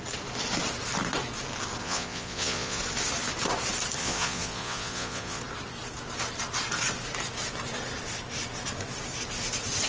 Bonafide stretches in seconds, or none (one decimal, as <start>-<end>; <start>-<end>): 0.0-1.8; 2.8-4.0; 5.4-9.9